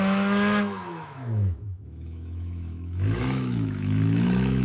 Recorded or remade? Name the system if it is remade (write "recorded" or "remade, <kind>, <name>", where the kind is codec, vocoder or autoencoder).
remade, autoencoder, DAC-VAE